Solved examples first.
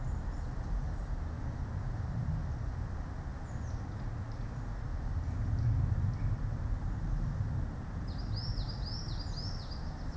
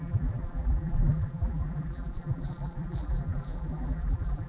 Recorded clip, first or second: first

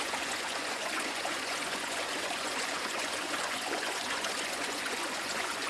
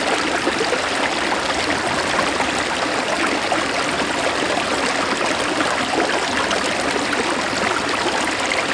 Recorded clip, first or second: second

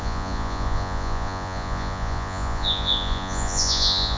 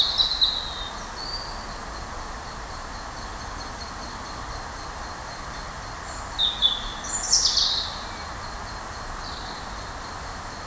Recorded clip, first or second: second